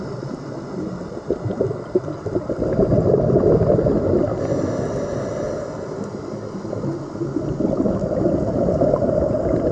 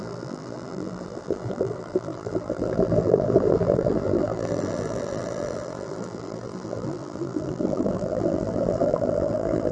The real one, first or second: first